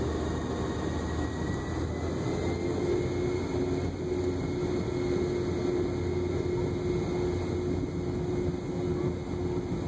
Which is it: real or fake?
real